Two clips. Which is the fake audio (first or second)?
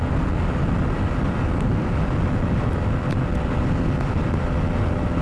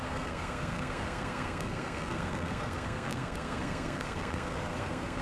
second